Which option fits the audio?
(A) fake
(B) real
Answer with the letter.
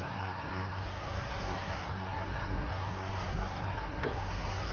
A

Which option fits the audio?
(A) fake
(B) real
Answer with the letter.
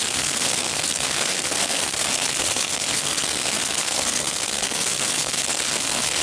A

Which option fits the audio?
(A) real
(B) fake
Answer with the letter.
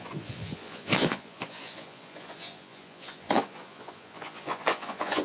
B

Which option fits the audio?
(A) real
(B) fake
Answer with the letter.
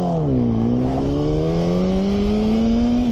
A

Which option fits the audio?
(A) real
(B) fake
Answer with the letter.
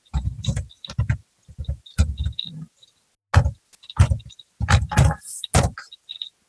A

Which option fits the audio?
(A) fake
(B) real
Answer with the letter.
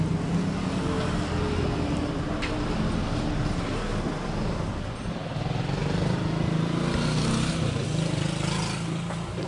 B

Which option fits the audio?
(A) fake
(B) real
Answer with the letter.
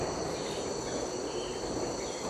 B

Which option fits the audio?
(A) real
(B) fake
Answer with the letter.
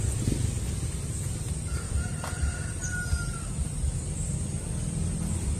A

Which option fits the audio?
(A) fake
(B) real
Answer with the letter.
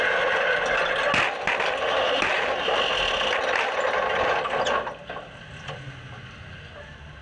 B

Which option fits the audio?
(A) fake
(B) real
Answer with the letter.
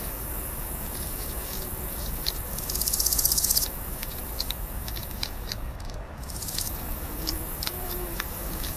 A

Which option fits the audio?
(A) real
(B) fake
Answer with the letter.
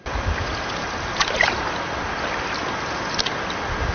A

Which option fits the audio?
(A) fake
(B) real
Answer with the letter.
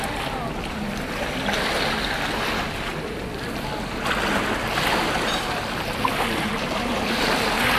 B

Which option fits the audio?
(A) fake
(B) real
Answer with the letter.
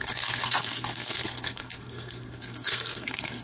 A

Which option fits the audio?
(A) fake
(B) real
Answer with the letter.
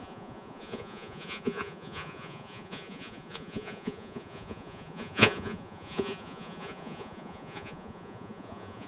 A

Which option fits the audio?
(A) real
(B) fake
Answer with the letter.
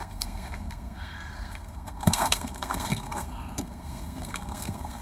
B